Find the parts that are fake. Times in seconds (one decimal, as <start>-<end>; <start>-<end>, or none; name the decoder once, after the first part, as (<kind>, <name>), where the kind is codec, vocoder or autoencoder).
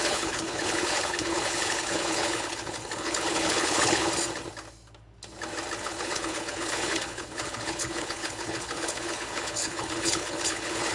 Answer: 0.0-4.1 (codec, HILCodec); 5.8-10.9